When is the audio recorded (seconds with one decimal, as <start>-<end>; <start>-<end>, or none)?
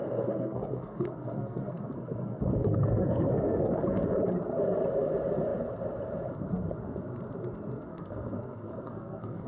4.2-7.9